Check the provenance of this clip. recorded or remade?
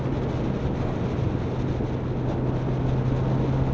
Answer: recorded